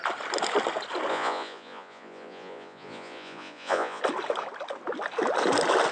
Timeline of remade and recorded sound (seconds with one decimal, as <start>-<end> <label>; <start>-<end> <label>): 0.0-1.1 recorded; 1.1-4.0 remade; 4.0-5.9 recorded